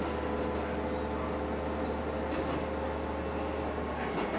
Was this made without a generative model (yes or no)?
yes